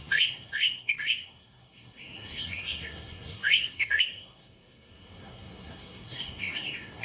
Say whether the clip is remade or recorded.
remade